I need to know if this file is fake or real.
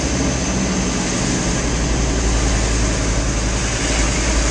real